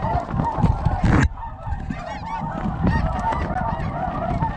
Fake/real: real